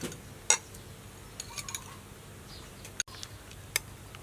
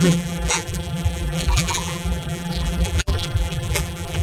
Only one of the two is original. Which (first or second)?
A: first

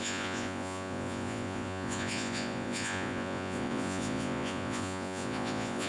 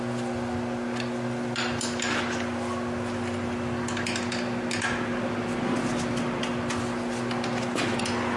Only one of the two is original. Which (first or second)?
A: second